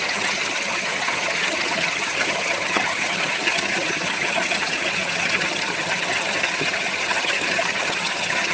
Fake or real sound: fake